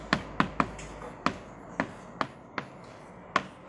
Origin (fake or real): real